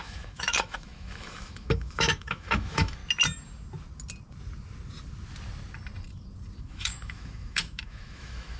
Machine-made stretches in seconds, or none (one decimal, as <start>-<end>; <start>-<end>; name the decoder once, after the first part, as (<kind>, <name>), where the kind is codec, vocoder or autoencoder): 0.0-3.0 (autoencoder, DAC-VAE); 6.6-8.6